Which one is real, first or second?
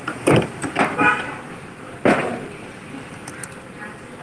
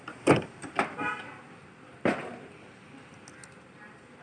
second